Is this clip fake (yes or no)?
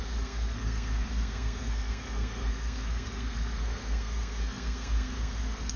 yes